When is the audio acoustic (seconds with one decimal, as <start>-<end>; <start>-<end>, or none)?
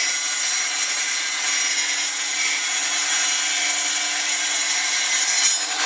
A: 0.0-5.9